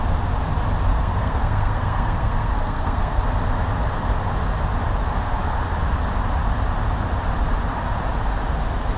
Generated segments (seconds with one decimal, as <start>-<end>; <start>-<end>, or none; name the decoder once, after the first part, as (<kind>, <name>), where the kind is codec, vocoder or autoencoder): 0.9-3.2 (codec, SNAC)